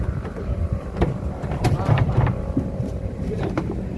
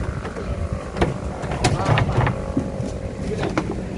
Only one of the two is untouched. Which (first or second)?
second